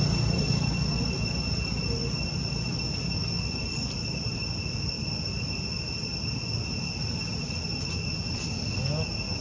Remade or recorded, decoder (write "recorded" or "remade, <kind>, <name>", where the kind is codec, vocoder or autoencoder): recorded